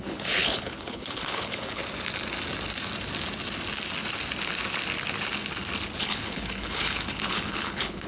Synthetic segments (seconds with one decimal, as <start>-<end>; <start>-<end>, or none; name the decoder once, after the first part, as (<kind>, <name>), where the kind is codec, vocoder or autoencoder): 0.0-1.8 (codec, HILCodec); 6.0-8.1